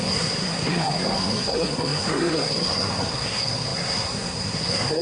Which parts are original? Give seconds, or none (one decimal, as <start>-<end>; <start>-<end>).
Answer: none